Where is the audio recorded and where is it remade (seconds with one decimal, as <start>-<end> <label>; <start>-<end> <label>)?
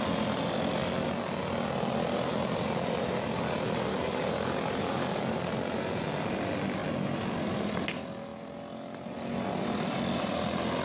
0.0-3.9 recorded; 3.9-5.5 remade; 5.5-10.8 recorded